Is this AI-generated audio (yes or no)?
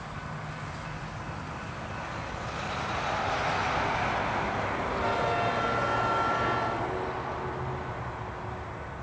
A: no